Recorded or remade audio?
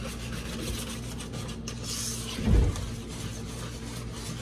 recorded